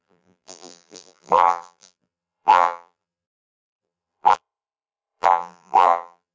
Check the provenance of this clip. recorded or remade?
remade